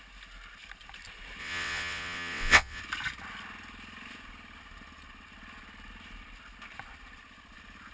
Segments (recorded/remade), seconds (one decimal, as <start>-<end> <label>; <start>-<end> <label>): 0.0-1.4 recorded; 1.4-2.8 remade; 2.8-7.9 recorded